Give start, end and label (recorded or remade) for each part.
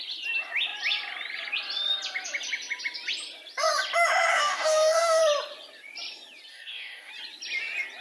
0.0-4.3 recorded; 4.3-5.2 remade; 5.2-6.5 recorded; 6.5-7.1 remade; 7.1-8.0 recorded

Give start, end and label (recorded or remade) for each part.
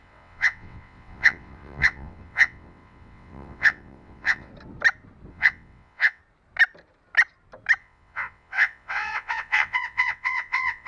0.0-4.5 remade; 4.5-5.3 recorded; 5.3-6.2 remade; 6.2-7.8 recorded; 7.8-10.9 remade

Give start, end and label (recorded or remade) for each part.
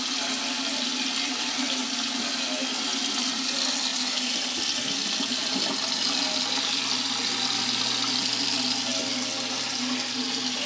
0.0-10.7 recorded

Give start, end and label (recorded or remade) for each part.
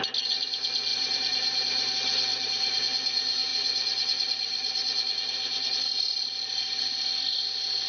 0.0-0.9 recorded; 0.9-1.9 remade; 1.9-2.3 recorded; 2.3-2.8 remade; 2.8-7.9 recorded